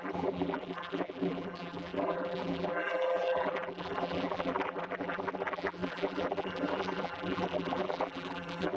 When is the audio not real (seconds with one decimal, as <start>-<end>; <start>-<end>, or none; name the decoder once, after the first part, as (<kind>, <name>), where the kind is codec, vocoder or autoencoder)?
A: 0.0-8.8 (vocoder, BigVGAN v2)